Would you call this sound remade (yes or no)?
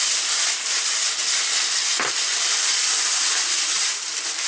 no